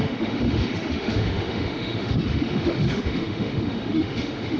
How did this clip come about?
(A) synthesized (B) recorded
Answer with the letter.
A